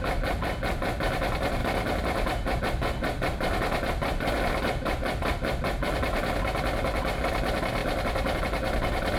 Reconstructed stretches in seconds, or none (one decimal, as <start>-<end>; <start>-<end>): none